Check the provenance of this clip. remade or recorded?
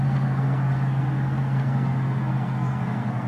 remade